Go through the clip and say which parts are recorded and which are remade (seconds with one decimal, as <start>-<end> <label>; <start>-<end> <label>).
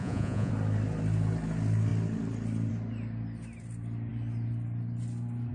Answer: 0.0-0.5 remade; 0.5-5.5 recorded